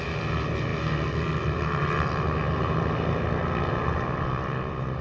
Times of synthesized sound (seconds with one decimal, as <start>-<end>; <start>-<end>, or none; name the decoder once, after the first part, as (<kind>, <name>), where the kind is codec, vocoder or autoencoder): none